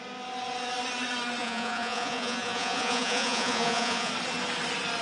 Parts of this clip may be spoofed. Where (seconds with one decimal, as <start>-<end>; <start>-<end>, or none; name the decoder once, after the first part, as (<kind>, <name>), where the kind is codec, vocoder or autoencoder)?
1.4-4.1 (vocoder, Vocos)